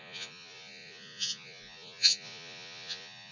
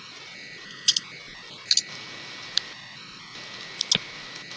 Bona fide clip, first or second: second